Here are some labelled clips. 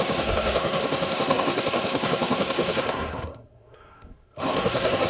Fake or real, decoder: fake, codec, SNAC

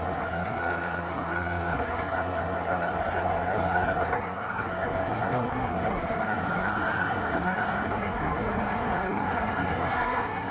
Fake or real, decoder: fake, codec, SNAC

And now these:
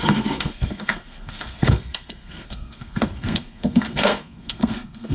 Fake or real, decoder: fake, codec, SNAC